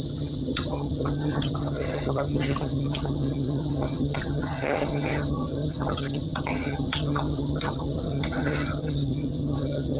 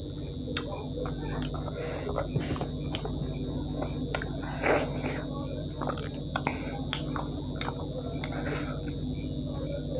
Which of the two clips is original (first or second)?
second